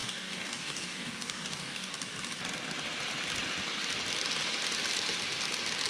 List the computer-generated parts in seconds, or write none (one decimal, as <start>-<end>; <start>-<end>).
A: 0.0-1.9

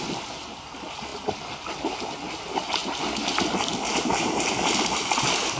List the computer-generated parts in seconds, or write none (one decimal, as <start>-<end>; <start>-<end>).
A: none

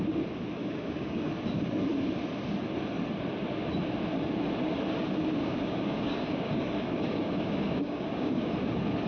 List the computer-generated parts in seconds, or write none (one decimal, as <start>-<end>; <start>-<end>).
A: 0.6-1.3; 5.4-8.5

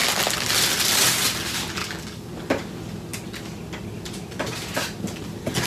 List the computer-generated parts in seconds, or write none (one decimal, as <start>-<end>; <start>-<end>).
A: 1.8-2.3

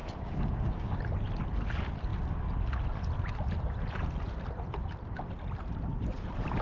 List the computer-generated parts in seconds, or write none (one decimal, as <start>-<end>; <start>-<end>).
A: 0.0-1.0